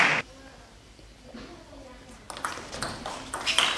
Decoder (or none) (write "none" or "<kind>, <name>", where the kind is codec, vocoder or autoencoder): none